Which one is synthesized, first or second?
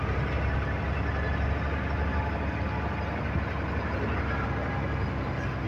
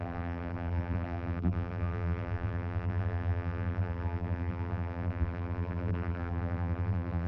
second